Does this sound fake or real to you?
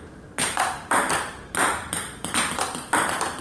real